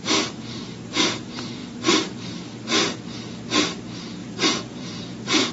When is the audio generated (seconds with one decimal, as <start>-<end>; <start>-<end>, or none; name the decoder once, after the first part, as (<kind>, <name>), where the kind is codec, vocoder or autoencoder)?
4.2-5.5 (vocoder, Vocos)

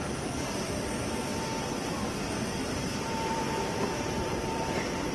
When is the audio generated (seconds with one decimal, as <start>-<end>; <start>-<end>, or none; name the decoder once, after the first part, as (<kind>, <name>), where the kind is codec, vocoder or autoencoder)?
2.6-5.1 (vocoder, BigVGAN v2)

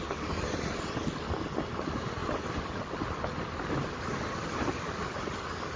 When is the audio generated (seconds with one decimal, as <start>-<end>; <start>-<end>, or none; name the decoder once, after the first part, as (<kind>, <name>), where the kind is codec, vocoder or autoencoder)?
none

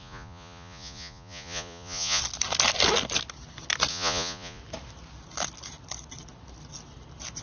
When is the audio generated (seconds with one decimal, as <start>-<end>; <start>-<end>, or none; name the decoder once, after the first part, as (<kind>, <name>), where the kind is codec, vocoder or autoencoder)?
0.0-2.2 (vocoder, Vocos); 3.9-4.6

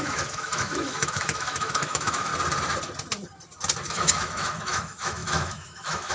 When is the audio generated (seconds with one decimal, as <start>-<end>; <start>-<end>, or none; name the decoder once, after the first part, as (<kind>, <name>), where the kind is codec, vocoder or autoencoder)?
0.0-2.3 (autoencoder, DAC-VAE); 3.9-6.1

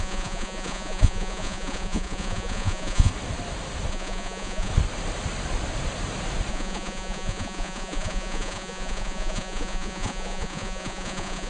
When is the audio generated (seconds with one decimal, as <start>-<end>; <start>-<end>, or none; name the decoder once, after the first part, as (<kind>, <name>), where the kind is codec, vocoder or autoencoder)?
0.0-3.1 (vocoder, Vocos); 3.9-4.7; 6.5-11.5

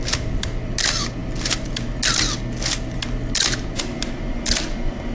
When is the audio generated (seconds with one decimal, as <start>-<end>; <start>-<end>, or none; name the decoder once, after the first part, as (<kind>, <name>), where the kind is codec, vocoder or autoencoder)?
none